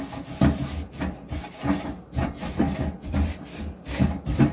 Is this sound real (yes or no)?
yes